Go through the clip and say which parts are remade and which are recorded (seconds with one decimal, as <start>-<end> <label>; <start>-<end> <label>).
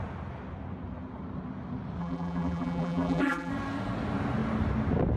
0.0-2.0 recorded; 2.0-3.5 remade; 3.5-5.2 recorded